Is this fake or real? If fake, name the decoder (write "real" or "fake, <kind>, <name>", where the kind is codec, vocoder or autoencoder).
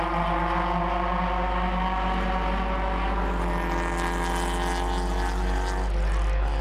real